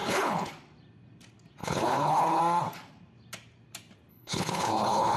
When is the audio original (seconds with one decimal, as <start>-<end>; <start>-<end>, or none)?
0.5-1.6; 2.4-4.1